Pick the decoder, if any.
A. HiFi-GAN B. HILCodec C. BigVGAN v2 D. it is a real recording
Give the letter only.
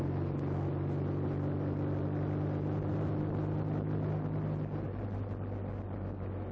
D